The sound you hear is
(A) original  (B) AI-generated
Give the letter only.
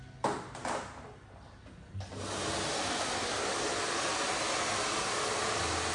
A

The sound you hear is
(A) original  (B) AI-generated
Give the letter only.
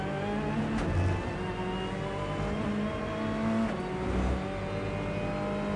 A